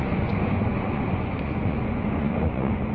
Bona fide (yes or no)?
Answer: no